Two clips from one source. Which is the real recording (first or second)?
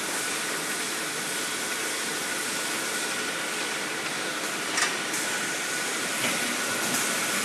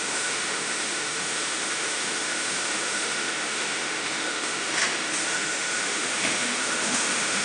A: first